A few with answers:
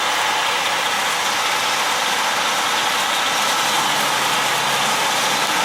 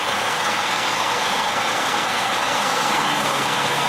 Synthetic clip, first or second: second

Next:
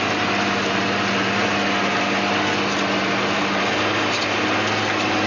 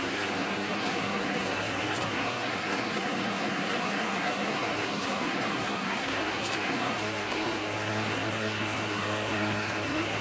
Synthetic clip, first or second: second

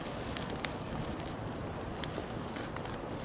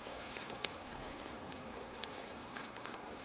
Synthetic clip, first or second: second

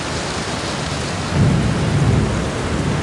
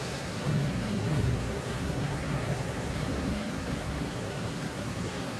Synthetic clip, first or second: second